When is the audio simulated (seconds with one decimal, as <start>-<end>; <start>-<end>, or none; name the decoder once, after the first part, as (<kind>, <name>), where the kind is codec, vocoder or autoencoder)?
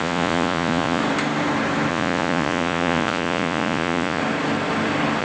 0.0-1.0 (vocoder, Vocos); 1.9-4.2